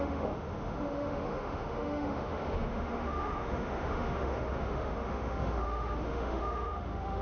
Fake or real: fake